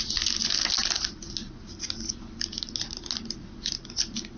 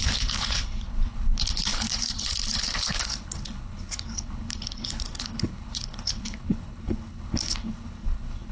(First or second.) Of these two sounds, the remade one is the second